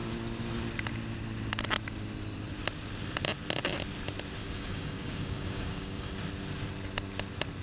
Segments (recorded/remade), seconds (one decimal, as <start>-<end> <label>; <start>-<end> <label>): 0.0-4.4 recorded; 4.4-6.1 remade; 6.1-7.6 recorded